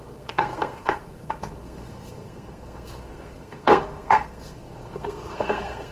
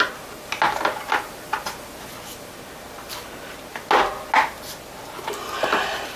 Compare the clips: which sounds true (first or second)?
second